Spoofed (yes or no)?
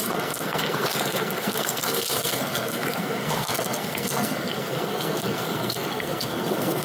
yes